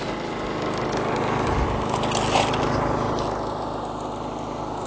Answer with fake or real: real